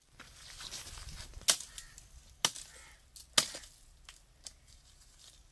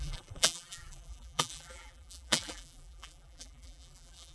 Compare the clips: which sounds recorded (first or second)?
first